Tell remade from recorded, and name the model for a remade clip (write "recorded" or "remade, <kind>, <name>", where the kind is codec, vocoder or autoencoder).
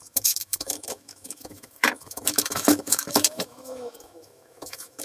remade, autoencoder, DAC-VAE